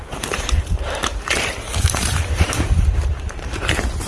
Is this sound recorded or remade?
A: remade